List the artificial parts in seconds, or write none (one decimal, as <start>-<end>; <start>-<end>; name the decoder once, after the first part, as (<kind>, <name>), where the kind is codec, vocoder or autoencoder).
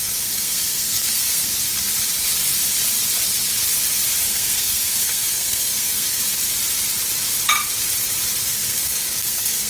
0.0-1.5 (codec, SNAC); 4.2-6.2; 8.5-9.7